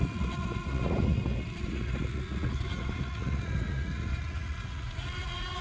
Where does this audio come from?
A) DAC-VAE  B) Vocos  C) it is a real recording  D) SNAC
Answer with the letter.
B